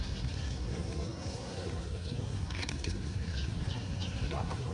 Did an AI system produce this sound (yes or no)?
yes